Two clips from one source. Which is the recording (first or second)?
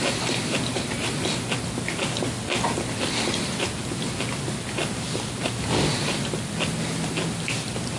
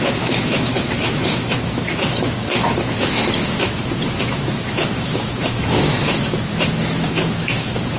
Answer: first